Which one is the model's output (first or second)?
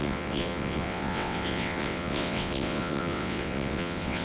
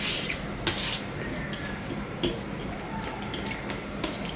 first